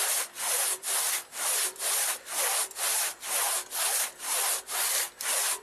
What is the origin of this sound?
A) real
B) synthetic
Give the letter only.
A